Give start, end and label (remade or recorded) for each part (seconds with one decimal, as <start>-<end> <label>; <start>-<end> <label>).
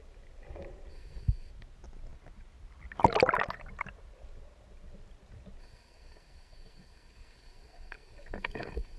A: 0.0-0.9 recorded; 0.9-1.5 remade; 1.5-5.6 recorded; 5.6-9.0 remade